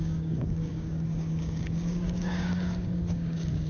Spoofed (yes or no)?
yes